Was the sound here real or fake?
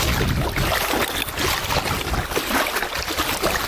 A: real